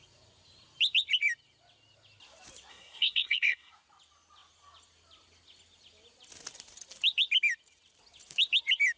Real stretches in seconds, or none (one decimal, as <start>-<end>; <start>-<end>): 0.0-2.7; 3.7-9.0